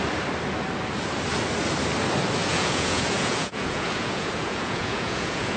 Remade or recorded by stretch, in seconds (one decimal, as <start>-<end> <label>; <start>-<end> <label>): 0.0-2.4 recorded; 2.4-5.6 remade